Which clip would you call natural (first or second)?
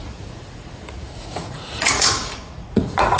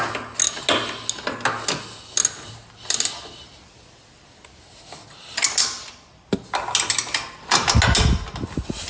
second